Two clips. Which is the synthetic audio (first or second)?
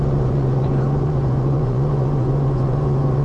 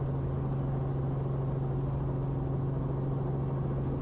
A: first